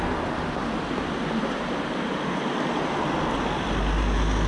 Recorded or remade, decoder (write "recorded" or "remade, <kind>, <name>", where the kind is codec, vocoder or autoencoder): recorded